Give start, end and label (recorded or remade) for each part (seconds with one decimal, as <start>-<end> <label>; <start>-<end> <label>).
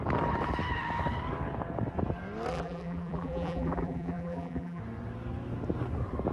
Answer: 0.0-2.5 recorded; 2.5-4.8 remade; 4.8-6.3 recorded